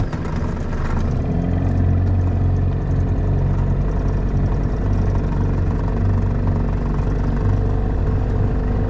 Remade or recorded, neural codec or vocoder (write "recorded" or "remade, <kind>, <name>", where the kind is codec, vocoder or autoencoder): recorded